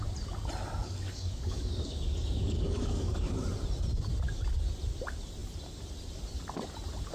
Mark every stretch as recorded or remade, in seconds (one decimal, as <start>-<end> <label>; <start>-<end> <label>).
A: 0.0-0.8 recorded; 0.8-3.3 remade; 3.3-7.1 recorded